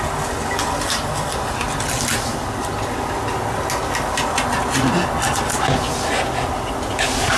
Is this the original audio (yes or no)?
yes